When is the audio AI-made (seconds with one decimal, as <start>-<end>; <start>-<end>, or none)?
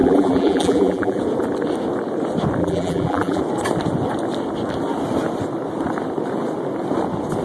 0.0-1.2; 2.6-3.4